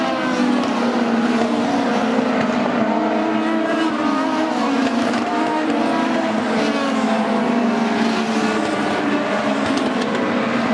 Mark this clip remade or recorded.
recorded